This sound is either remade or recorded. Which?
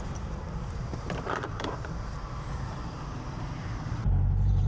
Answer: remade